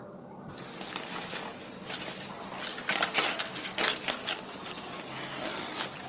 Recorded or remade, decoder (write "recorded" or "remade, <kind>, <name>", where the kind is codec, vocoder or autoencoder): recorded